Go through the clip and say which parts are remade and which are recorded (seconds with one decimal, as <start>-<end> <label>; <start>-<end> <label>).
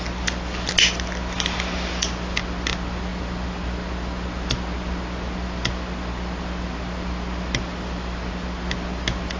0.0-9.4 recorded